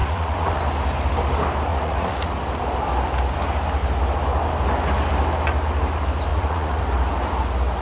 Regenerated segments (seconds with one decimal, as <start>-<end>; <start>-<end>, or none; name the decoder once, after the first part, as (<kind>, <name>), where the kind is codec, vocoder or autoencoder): 0.0-0.6 (vocoder, Vocos); 1.7-2.3; 6.3-6.8